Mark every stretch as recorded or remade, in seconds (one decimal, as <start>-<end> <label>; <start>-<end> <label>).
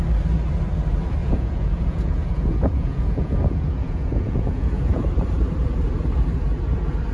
0.0-1.2 recorded; 1.2-5.0 remade; 5.0-7.1 recorded